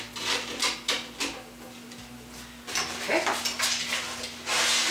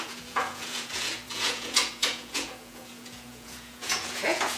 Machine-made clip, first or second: second